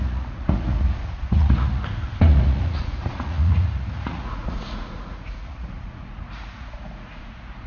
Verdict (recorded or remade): remade